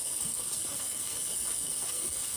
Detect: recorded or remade remade